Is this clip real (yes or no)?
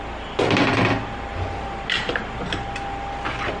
yes